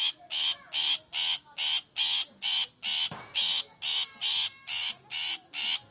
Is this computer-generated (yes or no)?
no